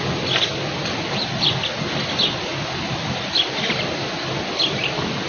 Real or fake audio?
real